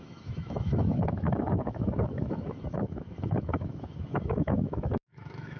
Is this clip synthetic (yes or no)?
yes